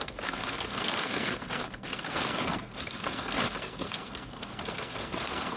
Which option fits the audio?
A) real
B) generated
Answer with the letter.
B